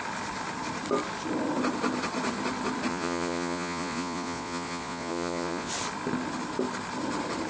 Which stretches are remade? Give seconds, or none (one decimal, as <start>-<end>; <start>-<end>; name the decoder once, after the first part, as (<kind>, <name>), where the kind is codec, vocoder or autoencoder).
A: 2.9-5.7 (vocoder, Vocos)